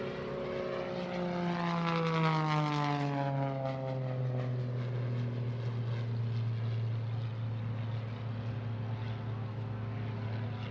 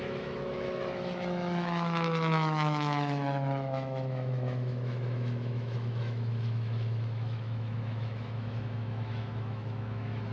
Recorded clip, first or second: first